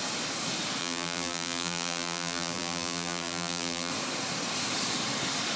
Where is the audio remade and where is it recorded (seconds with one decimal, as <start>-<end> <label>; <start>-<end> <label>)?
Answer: 0.0-0.8 recorded; 0.8-3.9 remade; 3.9-5.6 recorded